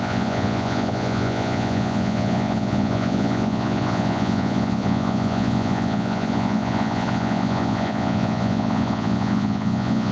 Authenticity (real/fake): fake